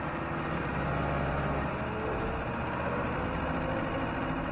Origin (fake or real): real